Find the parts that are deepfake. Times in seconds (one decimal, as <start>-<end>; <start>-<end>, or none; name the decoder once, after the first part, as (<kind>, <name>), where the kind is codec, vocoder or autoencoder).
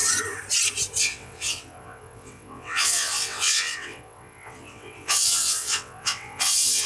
1.0-6.9 (vocoder, WaveNeXt)